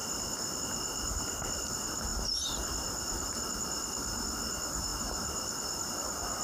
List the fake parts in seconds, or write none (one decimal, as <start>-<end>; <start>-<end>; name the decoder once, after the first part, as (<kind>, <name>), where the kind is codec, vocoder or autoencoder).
0.0-0.6 (vocoder, BigVGAN v2); 2.1-4.4; 4.9-5.9